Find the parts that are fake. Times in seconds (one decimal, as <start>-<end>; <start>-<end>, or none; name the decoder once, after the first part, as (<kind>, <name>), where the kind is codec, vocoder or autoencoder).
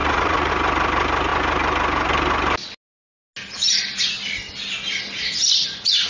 0.0-0.5 (vocoder, Vocos)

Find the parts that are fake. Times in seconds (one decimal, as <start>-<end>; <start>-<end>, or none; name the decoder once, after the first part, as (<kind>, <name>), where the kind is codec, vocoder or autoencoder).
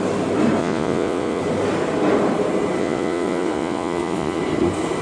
0.6-1.4 (vocoder, Vocos); 2.8-4.4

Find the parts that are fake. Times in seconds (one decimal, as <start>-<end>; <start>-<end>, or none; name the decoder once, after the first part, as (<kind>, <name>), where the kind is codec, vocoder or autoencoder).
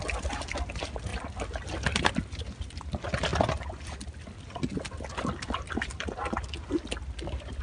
none